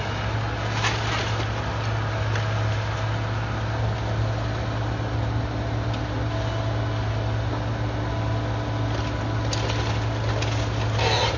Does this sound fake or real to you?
real